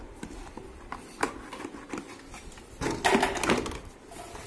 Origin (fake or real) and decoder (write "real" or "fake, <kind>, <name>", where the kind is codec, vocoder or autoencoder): real